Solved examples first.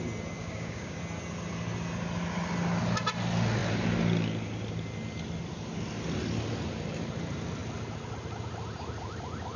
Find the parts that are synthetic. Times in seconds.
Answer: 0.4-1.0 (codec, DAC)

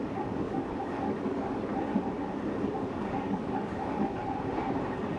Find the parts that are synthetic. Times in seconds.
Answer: 0.0-1.7 (codec, DAC); 2.6-4.2

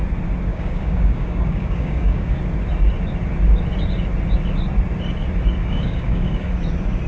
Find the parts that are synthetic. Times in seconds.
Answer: 0.5-2.4 (codec, DAC); 5.6-6.5

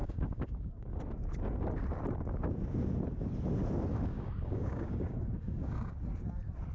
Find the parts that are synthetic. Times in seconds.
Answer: 0.0-1.0 (codec, DAC); 3.9-5.9

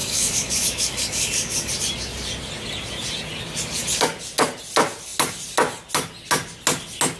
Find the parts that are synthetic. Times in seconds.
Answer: 0.0-1.7 (codec, DAC)

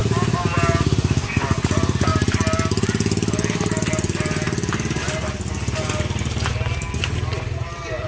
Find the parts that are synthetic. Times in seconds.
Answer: none

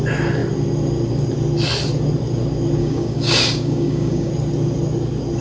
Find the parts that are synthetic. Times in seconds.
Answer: 2.8-4.3 (codec, DAC)